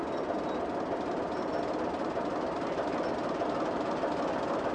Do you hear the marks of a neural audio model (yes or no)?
no